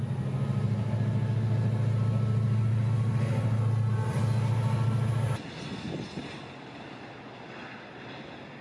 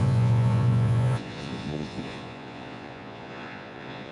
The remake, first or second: second